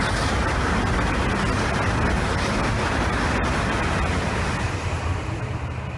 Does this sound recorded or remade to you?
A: recorded